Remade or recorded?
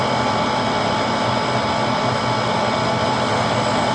recorded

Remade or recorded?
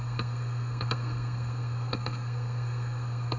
remade